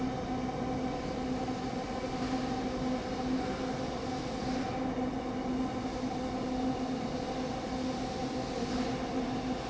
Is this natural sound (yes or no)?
yes